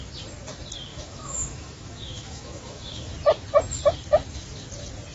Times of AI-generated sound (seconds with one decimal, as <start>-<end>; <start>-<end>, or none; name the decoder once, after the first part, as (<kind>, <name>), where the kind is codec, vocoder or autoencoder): 0.9-3.1 (autoencoder, DAC-VAE)